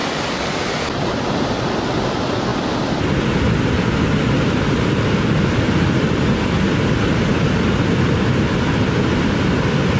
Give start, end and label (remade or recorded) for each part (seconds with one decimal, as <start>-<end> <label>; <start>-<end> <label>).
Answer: 0.0-10.0 recorded